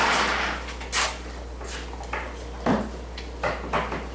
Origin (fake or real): real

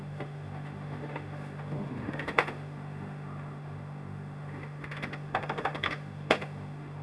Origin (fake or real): fake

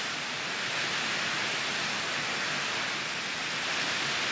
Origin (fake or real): real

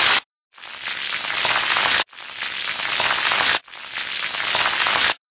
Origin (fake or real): real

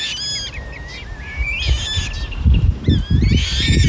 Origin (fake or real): real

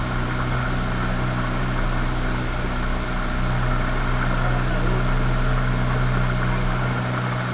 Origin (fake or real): real